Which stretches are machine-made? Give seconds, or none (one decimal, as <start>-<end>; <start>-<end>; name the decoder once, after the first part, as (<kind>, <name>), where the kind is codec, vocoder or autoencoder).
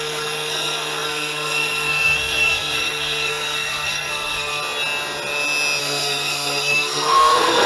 0.0-4.6 (codec, SNAC); 5.8-7.7